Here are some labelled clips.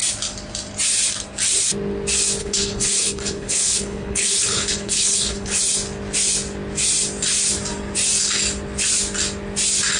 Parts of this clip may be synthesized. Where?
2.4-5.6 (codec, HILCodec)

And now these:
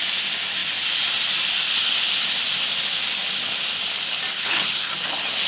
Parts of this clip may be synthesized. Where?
4.3-4.9 (codec, HILCodec)

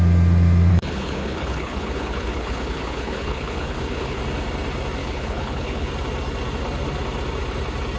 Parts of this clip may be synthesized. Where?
0.7-4.2 (codec, HILCodec); 5.0-5.9

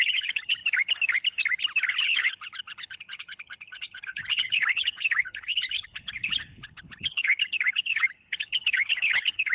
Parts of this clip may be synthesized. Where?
0.0-0.6 (codec, HILCodec); 1.9-9.5

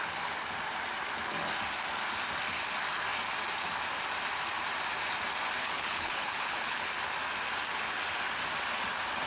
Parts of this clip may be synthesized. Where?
5.6-6.9 (codec, HILCodec)

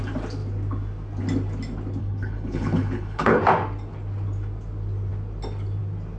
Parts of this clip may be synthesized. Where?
2.0-3.4 (codec, HILCodec)

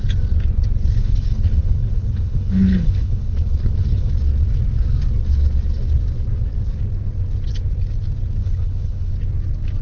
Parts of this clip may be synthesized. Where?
1.0-4.1 (codec, HILCodec); 8.4-9.1

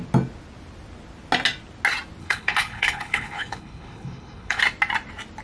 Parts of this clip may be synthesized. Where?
2.2-4.6 (codec, HILCodec)